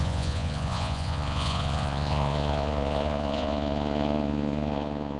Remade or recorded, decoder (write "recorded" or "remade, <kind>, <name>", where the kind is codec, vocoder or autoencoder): remade, vocoder, Vocos